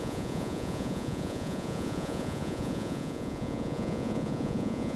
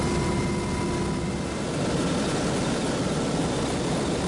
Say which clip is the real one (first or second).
second